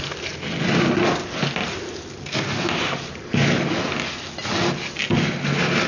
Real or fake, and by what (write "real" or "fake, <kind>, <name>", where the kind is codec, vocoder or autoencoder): real